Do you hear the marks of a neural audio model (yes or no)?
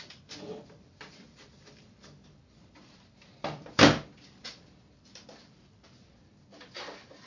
yes